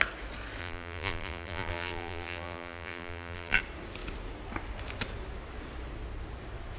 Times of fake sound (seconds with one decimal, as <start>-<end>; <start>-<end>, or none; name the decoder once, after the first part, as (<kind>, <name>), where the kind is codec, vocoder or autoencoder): 0.6-3.6 (vocoder, BigVGAN v2)